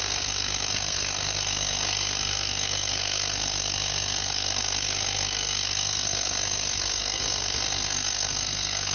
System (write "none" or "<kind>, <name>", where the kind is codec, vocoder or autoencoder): codec, SNAC